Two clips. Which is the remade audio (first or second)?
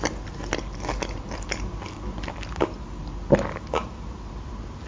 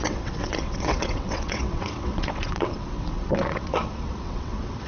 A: second